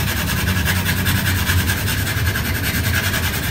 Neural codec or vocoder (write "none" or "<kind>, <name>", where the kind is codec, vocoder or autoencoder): none